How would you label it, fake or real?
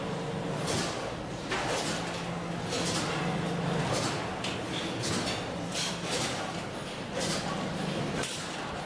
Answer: real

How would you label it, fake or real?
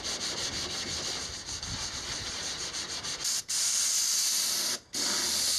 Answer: real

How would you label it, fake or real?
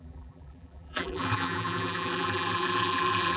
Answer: fake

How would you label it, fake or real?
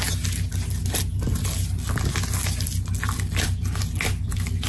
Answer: real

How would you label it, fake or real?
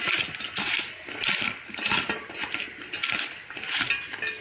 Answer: real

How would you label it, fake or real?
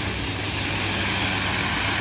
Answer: real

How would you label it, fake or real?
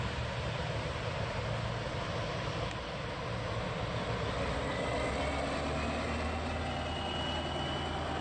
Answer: real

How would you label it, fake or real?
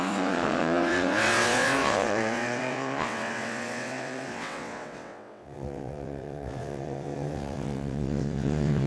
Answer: fake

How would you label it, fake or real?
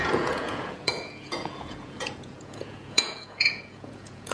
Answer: fake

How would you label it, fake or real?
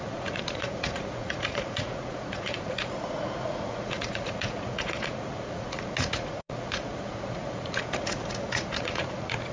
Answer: fake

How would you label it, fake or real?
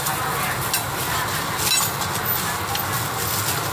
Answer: real